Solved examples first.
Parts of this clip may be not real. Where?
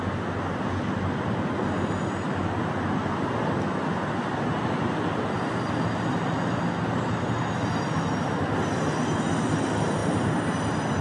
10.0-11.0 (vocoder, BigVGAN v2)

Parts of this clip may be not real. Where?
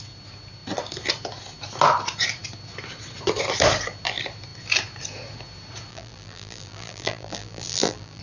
5.9-8.2 (vocoder, BigVGAN v2)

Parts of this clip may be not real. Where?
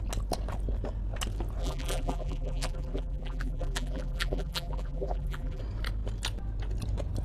1.6-5.6 (vocoder, BigVGAN v2)